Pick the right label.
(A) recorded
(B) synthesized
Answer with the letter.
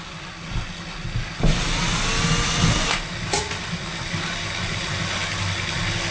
A